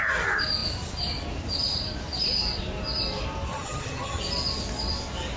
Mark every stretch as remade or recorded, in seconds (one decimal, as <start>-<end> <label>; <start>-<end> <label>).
0.0-3.5 recorded; 3.5-4.2 remade; 4.2-5.4 recorded